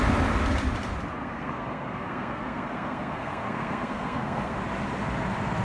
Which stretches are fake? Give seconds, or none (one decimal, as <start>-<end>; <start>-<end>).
1.2-4.6